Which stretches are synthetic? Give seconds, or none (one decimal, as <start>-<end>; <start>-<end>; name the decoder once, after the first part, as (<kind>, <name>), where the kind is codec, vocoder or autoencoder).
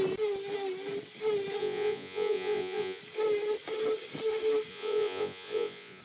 1.6-3.0 (vocoder, Vocos); 4.7-6.0